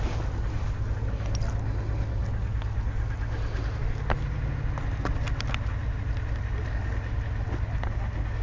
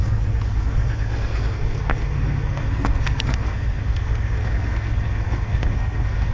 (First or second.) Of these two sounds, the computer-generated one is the second